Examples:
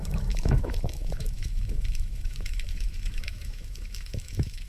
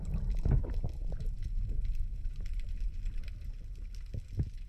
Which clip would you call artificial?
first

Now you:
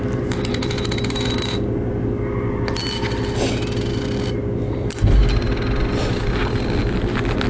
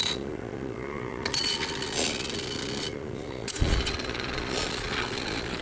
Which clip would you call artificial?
second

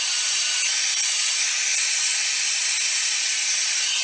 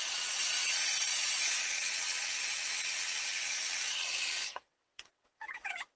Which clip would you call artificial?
second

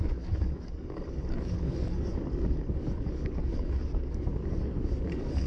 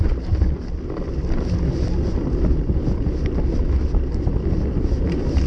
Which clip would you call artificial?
first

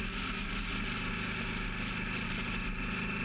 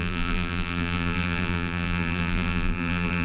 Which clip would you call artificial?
second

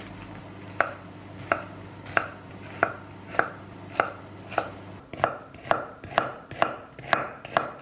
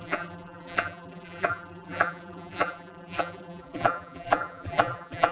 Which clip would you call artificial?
second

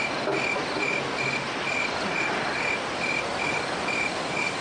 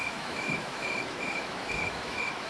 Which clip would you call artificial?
second